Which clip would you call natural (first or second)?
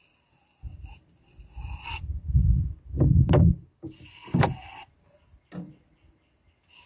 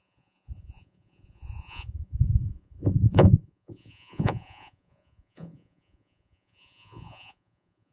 first